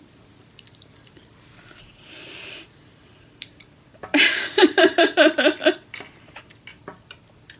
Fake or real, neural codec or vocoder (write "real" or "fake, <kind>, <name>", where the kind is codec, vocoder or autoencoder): fake, vocoder, BigVGAN v2